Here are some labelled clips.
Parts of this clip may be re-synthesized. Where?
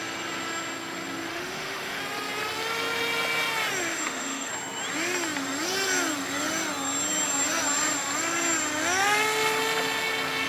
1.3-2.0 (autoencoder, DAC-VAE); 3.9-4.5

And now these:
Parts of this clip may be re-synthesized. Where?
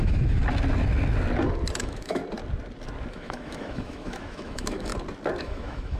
0.0-0.4 (autoencoder, DAC-VAE); 1.8-2.2; 3.1-4.9; 5.4-6.0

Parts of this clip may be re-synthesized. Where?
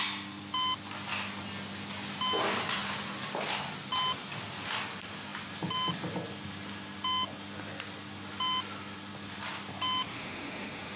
10.1-11.0 (autoencoder, DAC-VAE)